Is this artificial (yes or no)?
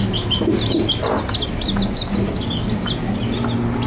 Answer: no